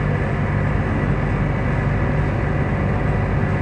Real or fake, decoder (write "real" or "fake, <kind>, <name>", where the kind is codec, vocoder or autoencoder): real